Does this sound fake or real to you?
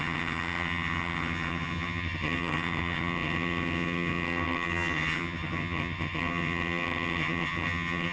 fake